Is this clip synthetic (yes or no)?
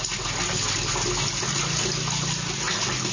no